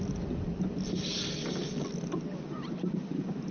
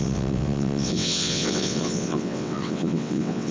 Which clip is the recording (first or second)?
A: first